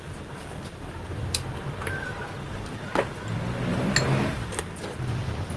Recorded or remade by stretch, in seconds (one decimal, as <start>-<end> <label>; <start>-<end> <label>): 0.0-0.7 recorded; 0.7-2.2 remade; 2.2-3.7 recorded; 3.7-4.6 remade; 4.6-5.6 recorded